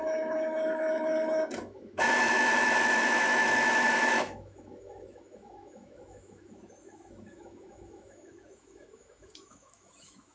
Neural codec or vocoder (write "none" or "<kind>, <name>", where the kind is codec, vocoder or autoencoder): autoencoder, DAC-VAE